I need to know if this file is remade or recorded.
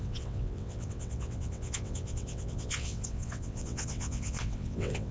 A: remade